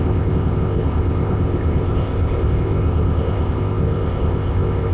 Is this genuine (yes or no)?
no